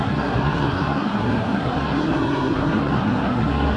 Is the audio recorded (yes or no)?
no